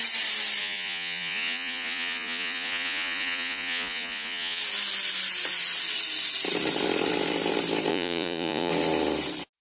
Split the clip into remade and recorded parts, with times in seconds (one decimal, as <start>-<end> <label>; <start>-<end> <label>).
0.0-0.6 recorded; 0.6-4.6 remade; 4.6-7.9 recorded; 7.9-8.7 remade; 8.7-9.6 recorded